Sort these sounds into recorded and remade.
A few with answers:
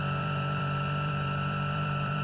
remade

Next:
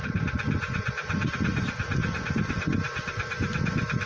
remade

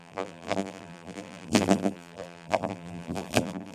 remade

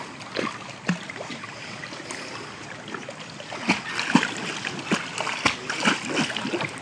recorded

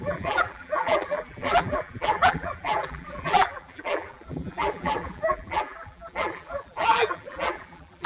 remade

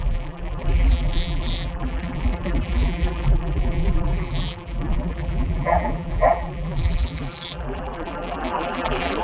remade